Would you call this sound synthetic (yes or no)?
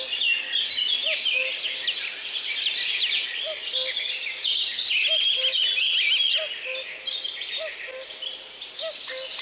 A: no